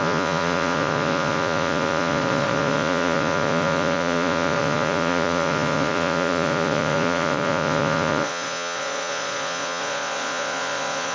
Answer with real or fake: fake